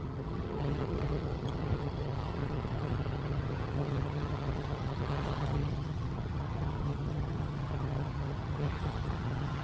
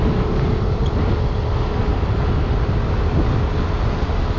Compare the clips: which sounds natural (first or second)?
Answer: second